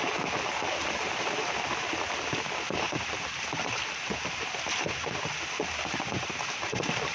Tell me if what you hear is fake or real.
real